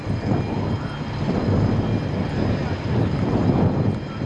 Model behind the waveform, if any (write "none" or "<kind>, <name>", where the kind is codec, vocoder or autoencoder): none